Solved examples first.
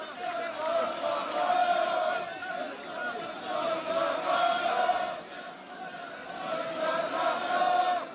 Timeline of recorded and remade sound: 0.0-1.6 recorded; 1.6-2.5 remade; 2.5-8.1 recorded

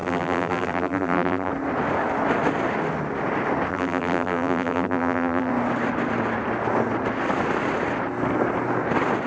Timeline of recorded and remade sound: 0.0-1.5 remade; 1.5-3.7 recorded; 3.7-5.5 remade; 5.5-9.3 recorded

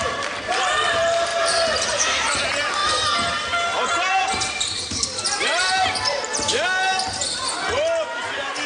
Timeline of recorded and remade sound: 0.0-2.8 remade; 2.8-4.1 recorded; 4.1-6.3 remade; 6.3-7.1 recorded; 7.1-8.7 remade

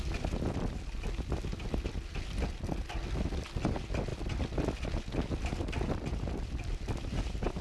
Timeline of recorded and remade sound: 0.0-4.1 recorded; 4.1-4.7 remade; 4.7-7.6 recorded

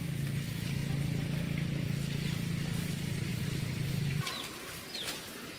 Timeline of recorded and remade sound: 0.0-3.3 recorded; 3.3-4.3 remade; 4.3-5.6 recorded

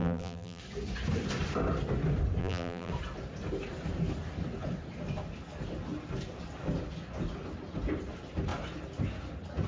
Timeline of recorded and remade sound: 0.0-0.6 remade; 0.6-2.4 recorded; 2.4-2.9 remade; 2.9-9.7 recorded

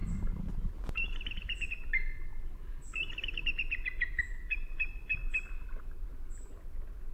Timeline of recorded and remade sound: 0.0-7.1 recorded

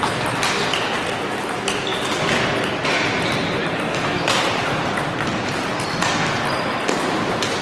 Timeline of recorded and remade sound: 0.0-7.6 recorded